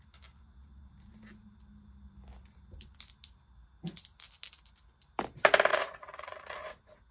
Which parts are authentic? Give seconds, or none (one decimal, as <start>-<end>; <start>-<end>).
0.0-5.7